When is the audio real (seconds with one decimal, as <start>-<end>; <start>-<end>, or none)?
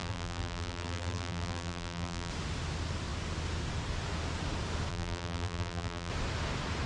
2.3-4.9; 6.1-6.9